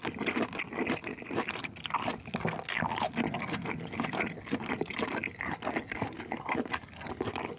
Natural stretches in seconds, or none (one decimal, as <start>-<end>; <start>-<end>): 0.0-7.6